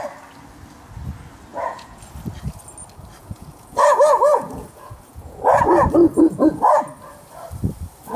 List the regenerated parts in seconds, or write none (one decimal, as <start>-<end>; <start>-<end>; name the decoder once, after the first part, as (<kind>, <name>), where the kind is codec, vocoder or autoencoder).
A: 1.5-2.0 (vocoder, Vocos); 3.2-5.4; 6.0-6.6